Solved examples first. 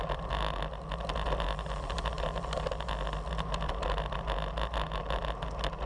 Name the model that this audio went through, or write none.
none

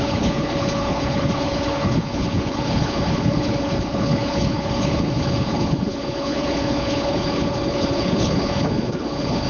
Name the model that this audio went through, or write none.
codec, HILCodec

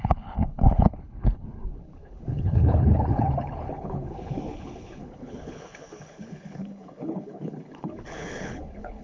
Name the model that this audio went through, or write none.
codec, HILCodec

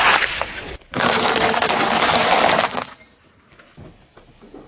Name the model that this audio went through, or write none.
none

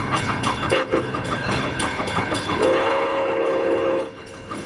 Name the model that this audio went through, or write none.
codec, HILCodec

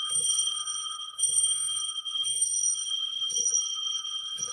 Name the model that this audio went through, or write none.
codec, HILCodec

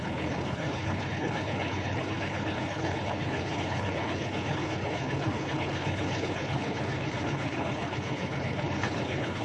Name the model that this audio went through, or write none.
codec, HILCodec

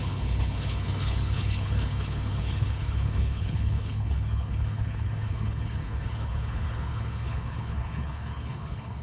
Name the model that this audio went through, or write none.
codec, HILCodec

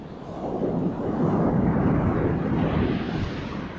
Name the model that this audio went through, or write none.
none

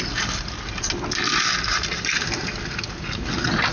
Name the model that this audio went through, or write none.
none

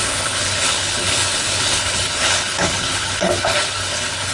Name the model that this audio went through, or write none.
codec, HILCodec